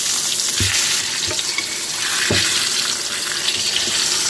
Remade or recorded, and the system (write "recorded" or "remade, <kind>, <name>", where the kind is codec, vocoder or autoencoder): recorded